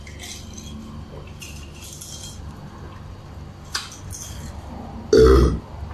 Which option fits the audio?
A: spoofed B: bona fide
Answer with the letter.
B